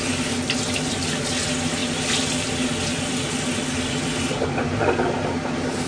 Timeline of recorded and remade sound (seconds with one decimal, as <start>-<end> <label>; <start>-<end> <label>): 0.0-5.9 recorded